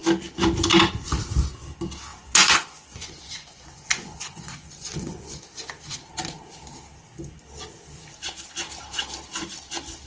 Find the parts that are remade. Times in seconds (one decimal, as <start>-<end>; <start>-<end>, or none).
2.1-5.4